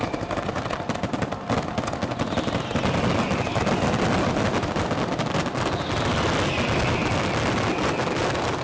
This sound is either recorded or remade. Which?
recorded